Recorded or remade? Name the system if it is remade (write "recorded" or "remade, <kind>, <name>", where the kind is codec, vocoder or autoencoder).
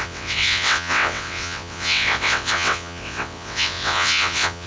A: remade, vocoder, WaveNeXt